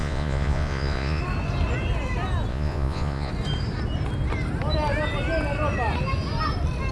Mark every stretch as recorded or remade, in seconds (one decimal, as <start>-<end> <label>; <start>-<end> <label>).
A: 0.0-1.2 remade; 1.2-2.5 recorded; 2.5-3.3 remade; 3.3-6.9 recorded